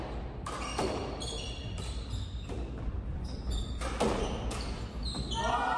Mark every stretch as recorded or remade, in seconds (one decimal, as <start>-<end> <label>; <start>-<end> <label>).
0.0-1.0 recorded; 1.0-1.6 remade; 1.6-5.8 recorded